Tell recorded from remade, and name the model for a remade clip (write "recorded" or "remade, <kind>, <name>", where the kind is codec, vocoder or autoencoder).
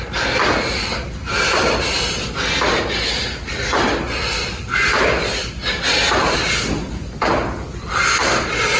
recorded